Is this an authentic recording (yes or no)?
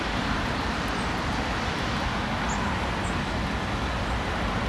yes